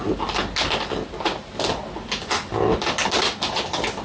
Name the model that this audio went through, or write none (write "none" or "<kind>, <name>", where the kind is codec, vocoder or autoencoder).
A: none